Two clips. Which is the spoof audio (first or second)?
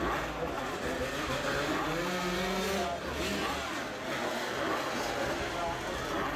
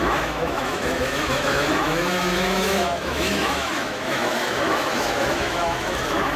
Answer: second